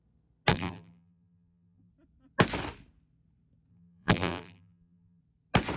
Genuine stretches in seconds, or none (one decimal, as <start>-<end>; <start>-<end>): 0.0-0.5; 1.9-3.7; 5.2-5.8